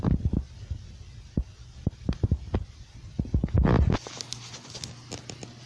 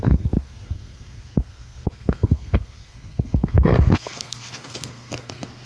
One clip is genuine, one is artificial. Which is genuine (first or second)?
first